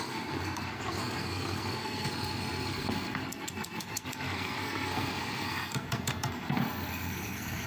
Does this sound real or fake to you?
fake